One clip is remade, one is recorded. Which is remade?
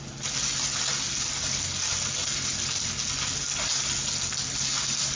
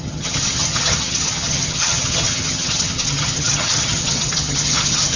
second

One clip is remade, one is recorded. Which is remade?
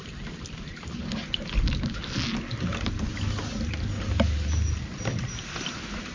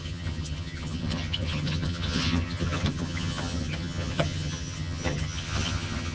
second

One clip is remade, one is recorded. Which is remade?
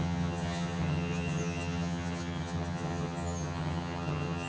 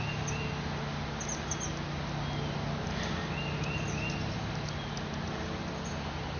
first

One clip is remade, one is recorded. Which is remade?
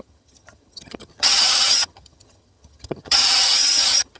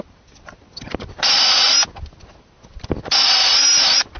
first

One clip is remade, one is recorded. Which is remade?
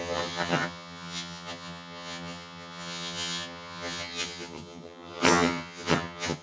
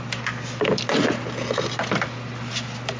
first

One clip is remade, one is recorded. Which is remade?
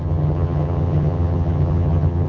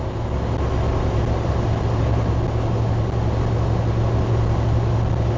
first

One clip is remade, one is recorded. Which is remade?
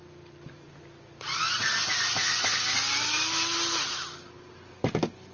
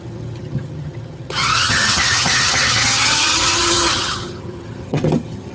second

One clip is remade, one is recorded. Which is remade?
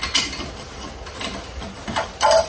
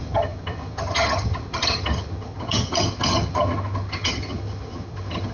second